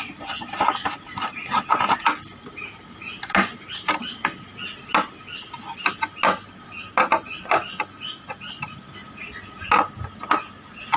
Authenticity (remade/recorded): recorded